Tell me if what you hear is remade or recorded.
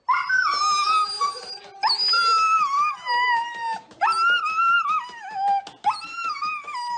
recorded